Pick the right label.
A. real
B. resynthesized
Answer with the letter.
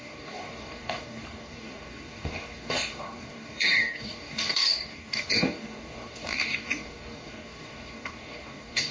B